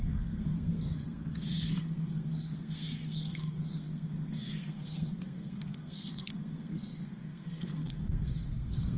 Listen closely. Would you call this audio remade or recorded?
remade